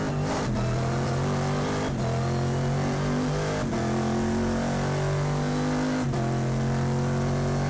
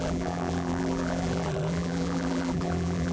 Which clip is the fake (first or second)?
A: second